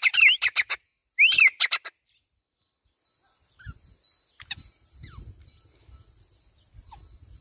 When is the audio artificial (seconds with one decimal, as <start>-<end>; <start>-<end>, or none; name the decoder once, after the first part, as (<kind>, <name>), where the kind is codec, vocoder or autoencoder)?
0.0-1.0 (vocoder, BigVGAN v2); 1.7-7.4